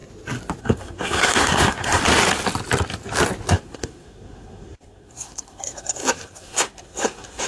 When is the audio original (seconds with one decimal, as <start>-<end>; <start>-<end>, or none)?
0.0-0.6; 2.0-3.5